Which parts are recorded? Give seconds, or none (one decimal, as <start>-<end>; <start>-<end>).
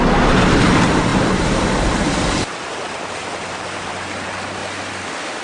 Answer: 4.6-5.4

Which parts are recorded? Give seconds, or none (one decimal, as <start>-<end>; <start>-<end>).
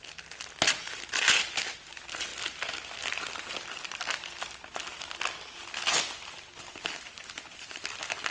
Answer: 0.0-8.3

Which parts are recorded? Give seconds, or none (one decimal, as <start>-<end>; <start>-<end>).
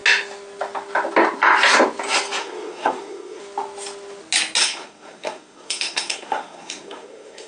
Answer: 0.0-2.4; 3.4-4.6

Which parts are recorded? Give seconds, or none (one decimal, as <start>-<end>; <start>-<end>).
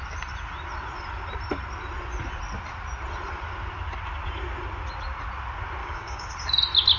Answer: 0.0-5.8; 6.3-7.0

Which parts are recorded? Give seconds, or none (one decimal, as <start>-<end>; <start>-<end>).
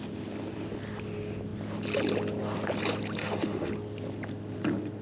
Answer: 0.0-3.2; 3.7-5.0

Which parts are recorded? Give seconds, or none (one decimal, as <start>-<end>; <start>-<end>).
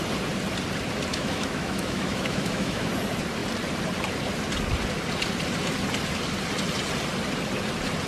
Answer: 0.0-1.1; 2.9-8.1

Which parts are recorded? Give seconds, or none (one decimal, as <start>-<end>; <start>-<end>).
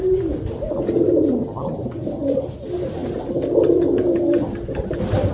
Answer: 0.0-5.3